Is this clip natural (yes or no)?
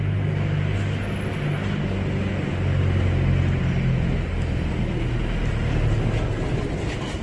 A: yes